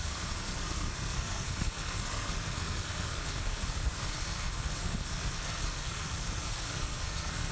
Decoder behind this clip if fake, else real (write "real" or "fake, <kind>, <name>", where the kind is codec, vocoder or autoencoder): fake, codec, SNAC